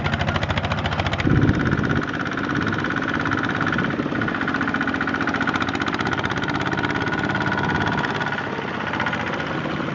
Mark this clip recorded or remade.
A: recorded